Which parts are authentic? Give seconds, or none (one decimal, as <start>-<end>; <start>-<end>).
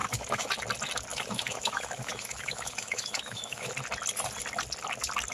0.5-1.1; 3.7-5.3